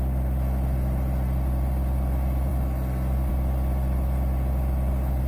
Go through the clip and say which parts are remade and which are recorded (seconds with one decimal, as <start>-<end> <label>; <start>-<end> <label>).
0.0-5.3 recorded